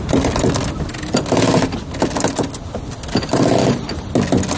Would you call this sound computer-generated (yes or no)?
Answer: no